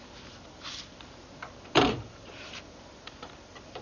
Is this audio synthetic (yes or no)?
yes